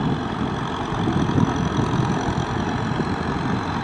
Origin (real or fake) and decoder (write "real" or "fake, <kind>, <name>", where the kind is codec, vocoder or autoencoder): real